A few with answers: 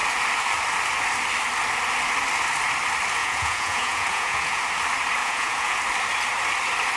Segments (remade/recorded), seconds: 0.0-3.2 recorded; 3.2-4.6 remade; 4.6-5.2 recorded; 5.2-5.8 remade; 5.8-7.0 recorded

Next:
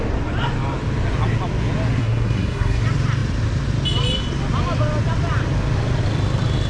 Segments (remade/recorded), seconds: 0.0-2.0 recorded; 2.0-2.8 remade; 2.8-6.7 recorded

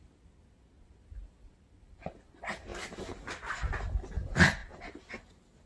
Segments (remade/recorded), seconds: 0.0-1.2 recorded; 1.2-2.1 remade; 2.1-4.6 recorded; 4.6-5.3 remade; 5.3-5.7 recorded

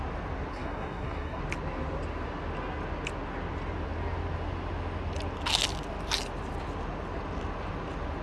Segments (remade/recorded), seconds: 0.0-0.5 recorded; 0.5-1.4 remade; 1.4-8.2 recorded